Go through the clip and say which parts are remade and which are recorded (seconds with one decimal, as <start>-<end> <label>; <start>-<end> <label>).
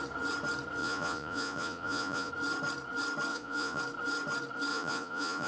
0.0-0.8 recorded; 0.8-2.3 remade; 2.3-3.3 recorded; 3.3-3.8 remade; 3.8-4.7 recorded; 4.7-5.5 remade